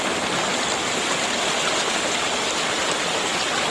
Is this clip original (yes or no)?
yes